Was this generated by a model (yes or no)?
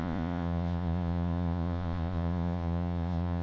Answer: yes